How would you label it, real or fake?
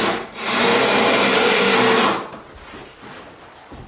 real